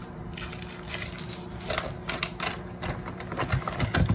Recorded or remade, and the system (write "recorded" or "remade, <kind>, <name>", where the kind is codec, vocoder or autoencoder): recorded